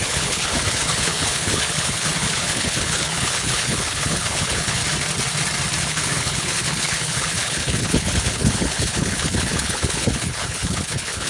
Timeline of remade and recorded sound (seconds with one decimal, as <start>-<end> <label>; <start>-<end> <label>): 0.0-4.8 remade; 4.8-5.8 recorded; 5.8-11.3 remade